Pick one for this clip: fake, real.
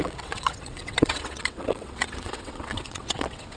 fake